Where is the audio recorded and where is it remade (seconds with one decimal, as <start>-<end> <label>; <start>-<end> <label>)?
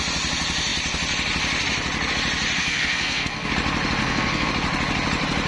0.0-2.6 recorded; 2.6-3.5 remade; 3.5-4.0 recorded; 4.0-4.5 remade; 4.5-5.5 recorded